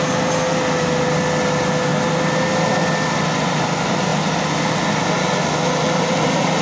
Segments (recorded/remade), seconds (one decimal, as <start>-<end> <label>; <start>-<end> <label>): 0.0-6.6 recorded